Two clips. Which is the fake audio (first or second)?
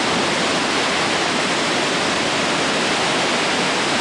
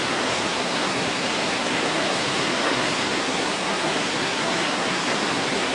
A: second